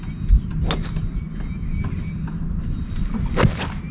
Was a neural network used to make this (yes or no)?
no